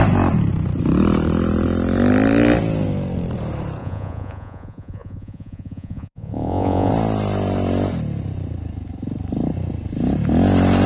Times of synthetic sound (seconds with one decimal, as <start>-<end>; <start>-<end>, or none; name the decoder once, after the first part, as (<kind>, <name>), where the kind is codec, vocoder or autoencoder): 3.8-6.9 (vocoder, Vocos)